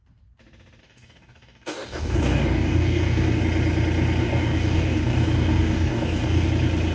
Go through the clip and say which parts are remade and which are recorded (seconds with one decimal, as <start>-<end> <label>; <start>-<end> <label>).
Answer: 0.0-0.8 recorded; 0.8-3.4 remade; 3.4-4.2 recorded; 4.2-6.5 remade; 6.5-6.9 recorded